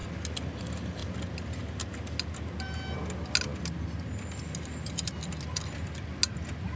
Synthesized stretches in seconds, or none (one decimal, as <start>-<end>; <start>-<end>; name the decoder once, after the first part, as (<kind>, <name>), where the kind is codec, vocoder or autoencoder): none